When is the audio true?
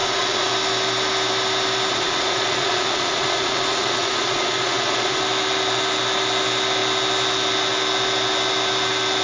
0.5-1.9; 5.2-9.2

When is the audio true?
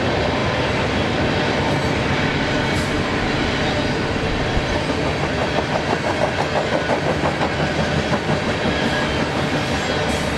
0.0-10.4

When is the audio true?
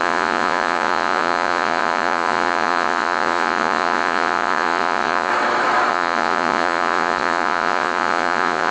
5.3-5.9